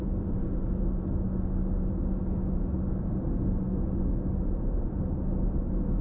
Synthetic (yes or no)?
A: no